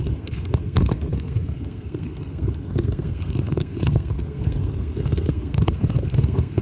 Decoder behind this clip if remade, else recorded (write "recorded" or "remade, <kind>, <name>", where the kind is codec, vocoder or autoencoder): remade, codec, SNAC